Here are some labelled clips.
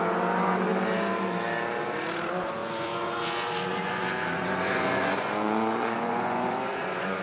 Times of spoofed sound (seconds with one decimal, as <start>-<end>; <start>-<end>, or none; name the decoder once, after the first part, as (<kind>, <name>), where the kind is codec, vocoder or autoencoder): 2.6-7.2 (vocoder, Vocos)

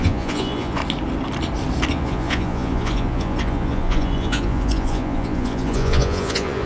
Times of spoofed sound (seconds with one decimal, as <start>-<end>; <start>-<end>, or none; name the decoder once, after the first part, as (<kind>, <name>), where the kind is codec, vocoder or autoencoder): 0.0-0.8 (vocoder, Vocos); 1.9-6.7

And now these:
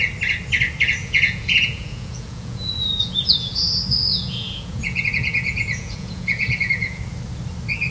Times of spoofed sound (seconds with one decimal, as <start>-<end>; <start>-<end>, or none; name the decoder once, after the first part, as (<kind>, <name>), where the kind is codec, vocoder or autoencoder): 1.0-3.6 (vocoder, Vocos); 4.1-7.0

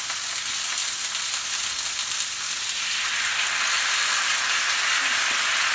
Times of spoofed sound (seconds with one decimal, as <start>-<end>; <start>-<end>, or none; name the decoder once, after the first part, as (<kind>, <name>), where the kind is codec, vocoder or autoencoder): none

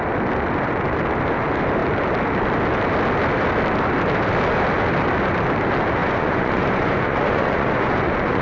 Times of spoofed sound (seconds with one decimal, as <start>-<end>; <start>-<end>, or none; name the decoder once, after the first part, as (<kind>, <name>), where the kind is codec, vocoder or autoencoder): 6.0-8.4 (vocoder, Vocos)